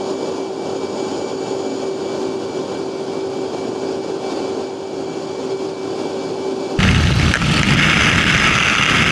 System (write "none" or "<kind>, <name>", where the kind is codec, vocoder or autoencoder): none